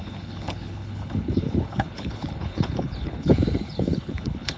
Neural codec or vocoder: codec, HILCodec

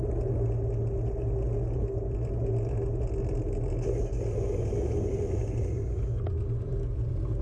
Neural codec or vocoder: none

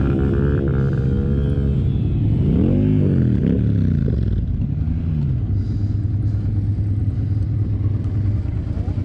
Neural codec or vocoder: none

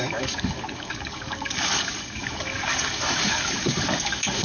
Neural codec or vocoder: codec, DAC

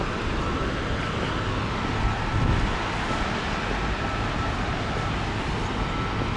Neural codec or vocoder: none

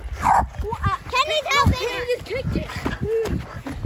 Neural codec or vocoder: none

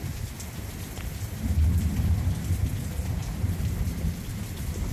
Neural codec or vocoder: none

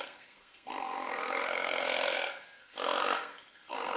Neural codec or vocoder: codec, SNAC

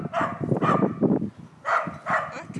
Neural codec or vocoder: none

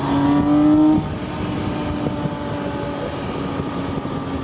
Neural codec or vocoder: none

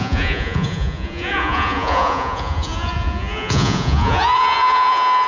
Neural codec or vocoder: vocoder, Vocos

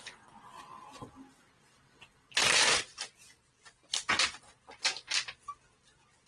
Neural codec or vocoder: none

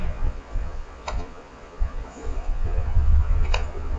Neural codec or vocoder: vocoder, Vocos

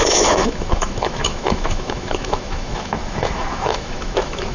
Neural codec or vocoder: autoencoder, DAC-VAE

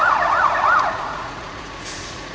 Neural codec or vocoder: vocoder, Vocos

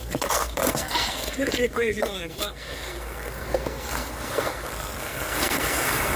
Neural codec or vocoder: codec, SNAC